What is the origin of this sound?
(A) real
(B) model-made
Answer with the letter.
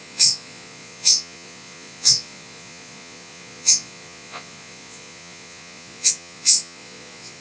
B